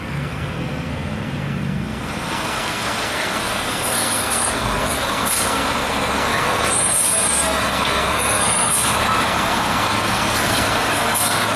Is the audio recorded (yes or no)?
no